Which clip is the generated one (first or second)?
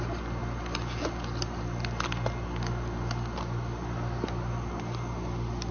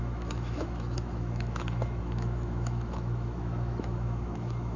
second